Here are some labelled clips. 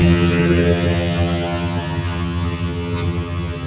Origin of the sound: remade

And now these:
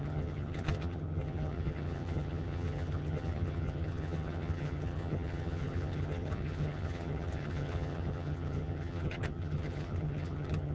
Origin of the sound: remade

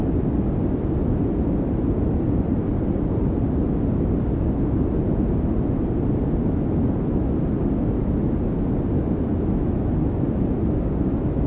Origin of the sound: recorded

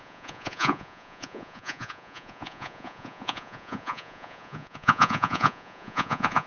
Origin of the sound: remade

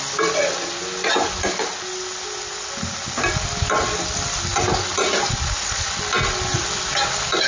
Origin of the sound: recorded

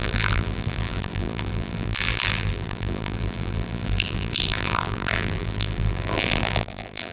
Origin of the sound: remade